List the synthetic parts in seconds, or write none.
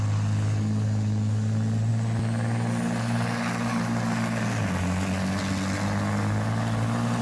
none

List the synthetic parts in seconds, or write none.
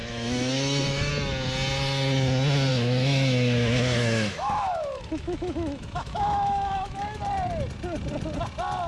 0.0-1.1; 2.7-7.2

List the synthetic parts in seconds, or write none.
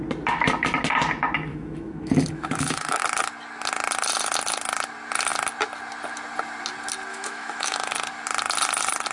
1.5-3.0; 7.1-7.9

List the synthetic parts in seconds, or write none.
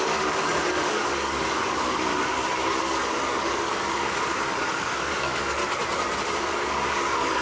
0.0-2.1; 2.8-5.6; 6.4-7.4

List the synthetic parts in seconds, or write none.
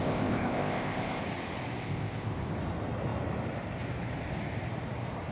0.0-1.2; 1.8-2.4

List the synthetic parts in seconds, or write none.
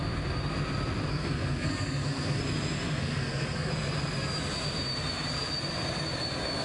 1.1-2.4; 3.0-3.7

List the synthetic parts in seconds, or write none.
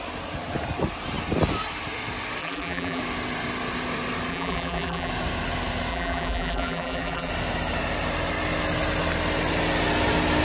2.4-3.0; 4.3-5.1; 5.9-7.3